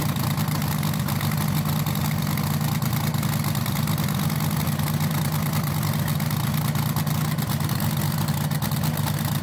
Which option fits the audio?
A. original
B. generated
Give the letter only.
A